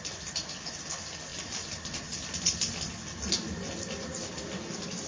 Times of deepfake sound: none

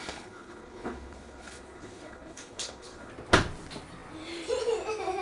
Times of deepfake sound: 0.0-3.1 (codec, HILCodec)

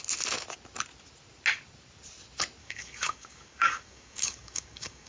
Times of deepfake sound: 2.6-5.1 (codec, DAC)

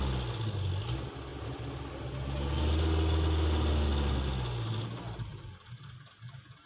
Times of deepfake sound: none